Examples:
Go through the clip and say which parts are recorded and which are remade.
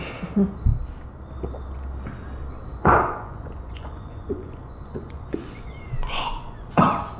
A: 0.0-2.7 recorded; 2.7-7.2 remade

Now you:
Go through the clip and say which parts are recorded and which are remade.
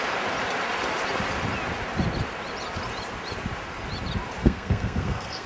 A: 0.0-4.4 recorded; 4.4-5.5 remade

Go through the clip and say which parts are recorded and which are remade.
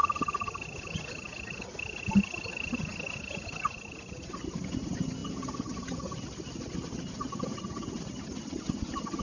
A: 0.0-9.2 recorded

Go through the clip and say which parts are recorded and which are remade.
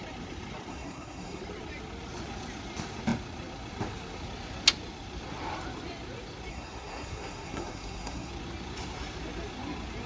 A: 0.0-0.7 recorded; 0.7-1.4 remade; 1.4-6.5 recorded; 6.5-8.3 remade; 8.3-10.1 recorded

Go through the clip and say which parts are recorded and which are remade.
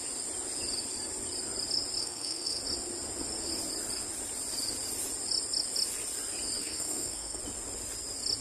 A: 0.0-2.0 recorded; 2.0-2.6 remade; 2.6-6.6 recorded; 6.6-7.4 remade; 7.4-8.4 recorded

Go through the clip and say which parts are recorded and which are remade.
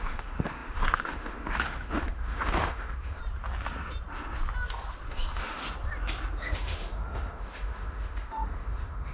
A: 0.0-3.2 remade; 3.2-5.1 recorded; 5.1-5.6 remade; 5.6-6.4 recorded; 6.4-9.1 remade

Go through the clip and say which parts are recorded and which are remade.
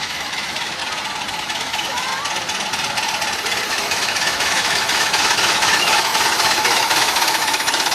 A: 0.0-0.8 remade; 0.8-1.4 recorded; 1.4-2.1 remade; 2.1-3.7 recorded; 3.7-7.9 remade